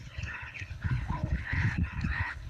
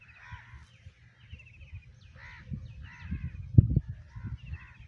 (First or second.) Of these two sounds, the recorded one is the second